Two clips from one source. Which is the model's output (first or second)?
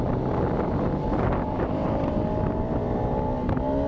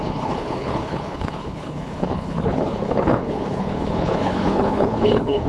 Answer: second